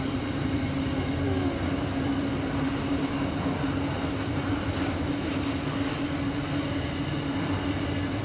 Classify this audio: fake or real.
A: real